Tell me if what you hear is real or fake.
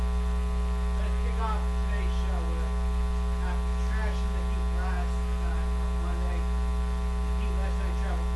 real